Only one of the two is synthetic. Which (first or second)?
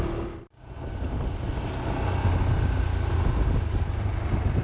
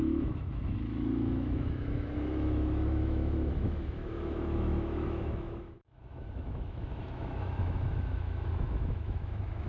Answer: second